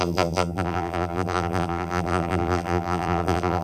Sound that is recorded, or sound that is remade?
remade